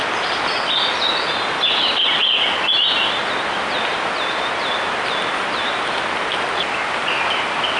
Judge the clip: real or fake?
real